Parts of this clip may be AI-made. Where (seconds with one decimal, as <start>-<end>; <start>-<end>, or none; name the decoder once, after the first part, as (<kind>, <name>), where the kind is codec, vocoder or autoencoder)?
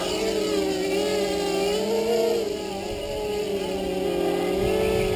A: none